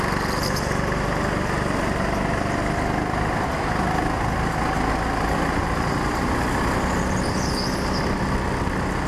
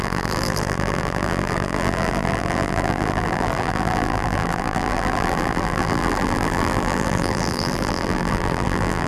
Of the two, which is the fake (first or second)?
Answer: second